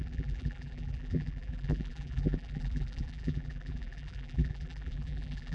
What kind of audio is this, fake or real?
fake